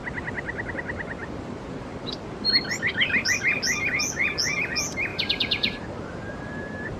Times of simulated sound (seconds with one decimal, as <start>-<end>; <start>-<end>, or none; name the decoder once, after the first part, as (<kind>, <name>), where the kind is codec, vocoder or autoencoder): 1.2-2.6 (vocoder, BigVGAN v2); 5.1-6.6